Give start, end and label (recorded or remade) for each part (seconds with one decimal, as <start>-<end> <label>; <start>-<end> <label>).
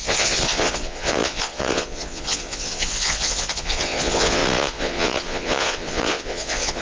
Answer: 0.0-6.8 remade